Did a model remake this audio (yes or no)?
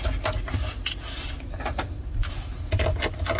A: no